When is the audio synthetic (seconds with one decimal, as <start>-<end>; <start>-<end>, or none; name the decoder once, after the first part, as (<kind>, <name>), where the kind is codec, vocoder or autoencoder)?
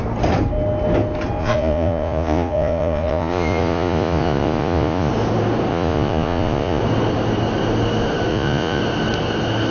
1.4-5.1 (vocoder, Vocos); 5.7-6.8; 8.3-8.8